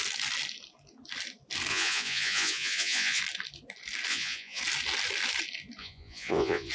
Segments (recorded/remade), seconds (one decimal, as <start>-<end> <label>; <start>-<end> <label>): 0.0-1.7 recorded; 1.7-3.2 remade; 3.2-4.1 recorded; 4.1-4.6 remade; 4.6-5.8 recorded; 5.8-6.7 remade

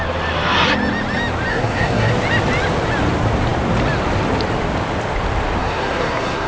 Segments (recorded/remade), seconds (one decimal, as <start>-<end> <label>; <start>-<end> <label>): 0.0-1.5 recorded; 1.5-2.1 remade; 2.1-5.6 recorded; 5.6-6.5 remade

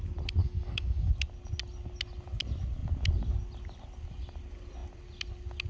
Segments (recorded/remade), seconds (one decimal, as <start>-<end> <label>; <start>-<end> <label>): 0.0-0.4 recorded; 0.4-1.1 remade; 1.1-5.7 recorded

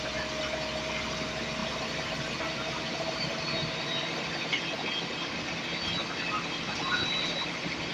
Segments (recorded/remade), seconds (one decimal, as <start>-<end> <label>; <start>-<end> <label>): 0.0-1.6 recorded; 1.6-3.8 remade; 3.8-7.9 recorded

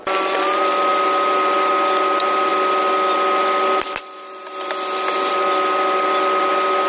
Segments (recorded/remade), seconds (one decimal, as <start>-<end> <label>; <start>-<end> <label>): 0.0-6.9 recorded

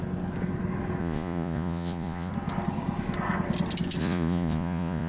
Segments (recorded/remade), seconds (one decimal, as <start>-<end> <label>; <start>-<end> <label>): 0.0-1.0 recorded; 1.0-2.3 remade; 2.3-4.0 recorded; 4.0-5.1 remade